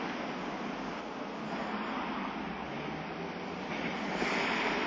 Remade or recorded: recorded